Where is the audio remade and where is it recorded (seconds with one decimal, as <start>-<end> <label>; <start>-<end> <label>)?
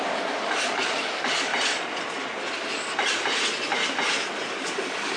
0.0-1.5 remade; 1.5-4.5 recorded; 4.5-5.2 remade